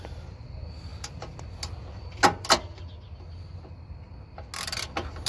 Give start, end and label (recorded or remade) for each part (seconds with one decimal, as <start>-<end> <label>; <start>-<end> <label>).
0.0-5.3 recorded

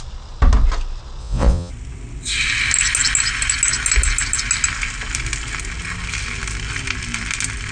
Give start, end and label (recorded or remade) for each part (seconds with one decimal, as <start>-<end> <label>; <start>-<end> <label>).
0.0-1.2 recorded; 1.2-1.7 remade; 1.7-7.7 recorded

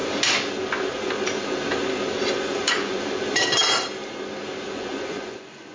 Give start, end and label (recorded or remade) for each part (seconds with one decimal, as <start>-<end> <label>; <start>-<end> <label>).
0.0-2.4 recorded; 2.4-3.0 remade; 3.0-4.7 recorded; 4.7-5.7 remade

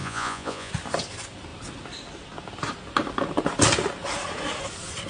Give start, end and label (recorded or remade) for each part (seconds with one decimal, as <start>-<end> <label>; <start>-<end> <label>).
0.0-0.7 remade; 0.7-5.1 recorded

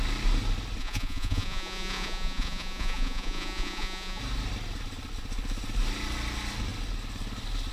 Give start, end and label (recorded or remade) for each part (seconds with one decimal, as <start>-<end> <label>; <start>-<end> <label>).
0.0-0.8 recorded; 0.8-4.2 remade; 4.2-7.7 recorded